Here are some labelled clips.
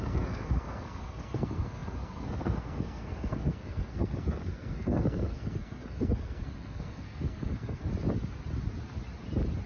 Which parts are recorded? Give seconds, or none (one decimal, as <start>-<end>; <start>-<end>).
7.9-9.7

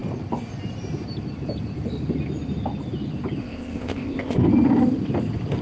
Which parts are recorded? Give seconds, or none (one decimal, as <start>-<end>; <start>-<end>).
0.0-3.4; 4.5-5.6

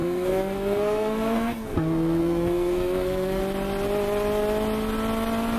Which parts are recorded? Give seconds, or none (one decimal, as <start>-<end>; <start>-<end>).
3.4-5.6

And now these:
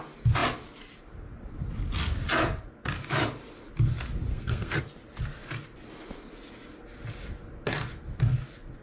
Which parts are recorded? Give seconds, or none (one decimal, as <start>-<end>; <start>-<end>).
0.0-4.3; 4.8-8.8